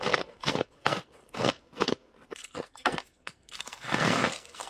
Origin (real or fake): fake